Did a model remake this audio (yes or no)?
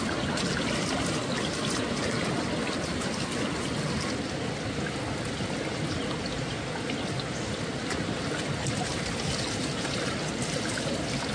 no